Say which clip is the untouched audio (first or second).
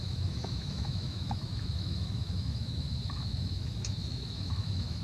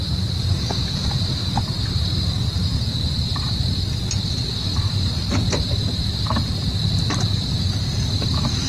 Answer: second